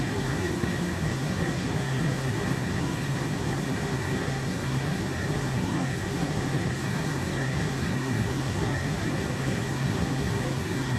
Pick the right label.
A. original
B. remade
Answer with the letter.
B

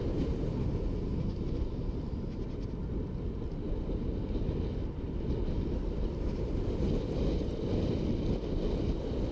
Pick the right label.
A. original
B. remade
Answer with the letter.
A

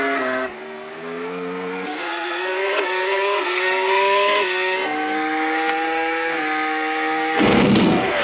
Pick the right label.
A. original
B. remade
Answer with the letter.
B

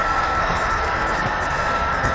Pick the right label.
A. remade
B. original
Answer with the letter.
A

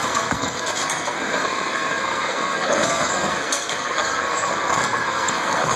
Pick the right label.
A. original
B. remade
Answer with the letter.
B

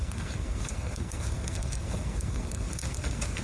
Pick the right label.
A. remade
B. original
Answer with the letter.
A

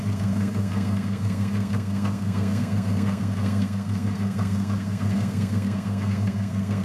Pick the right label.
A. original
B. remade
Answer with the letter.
B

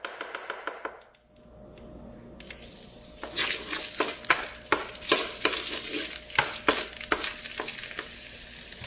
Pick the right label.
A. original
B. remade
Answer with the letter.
A